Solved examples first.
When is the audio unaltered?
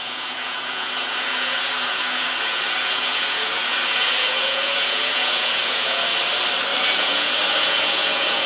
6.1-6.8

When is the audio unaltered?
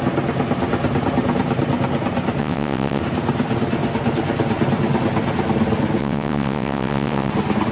0.0-2.4; 3.0-6.0; 7.3-7.7